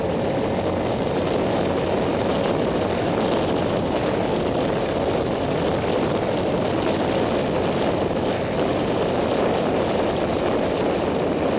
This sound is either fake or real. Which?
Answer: real